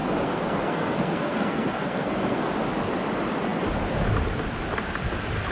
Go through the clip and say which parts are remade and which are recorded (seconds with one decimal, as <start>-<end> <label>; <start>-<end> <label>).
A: 0.0-2.5 remade; 2.5-5.5 recorded